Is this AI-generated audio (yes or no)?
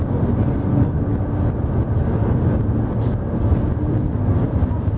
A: no